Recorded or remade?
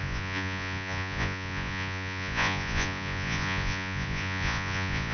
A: remade